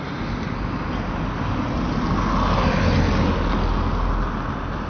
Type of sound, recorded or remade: recorded